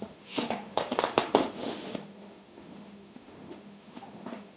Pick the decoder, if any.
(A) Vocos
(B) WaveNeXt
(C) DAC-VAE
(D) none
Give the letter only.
C